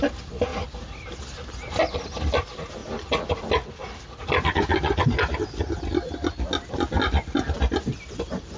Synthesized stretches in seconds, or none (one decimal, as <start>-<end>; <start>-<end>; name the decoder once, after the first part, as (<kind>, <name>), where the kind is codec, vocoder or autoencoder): none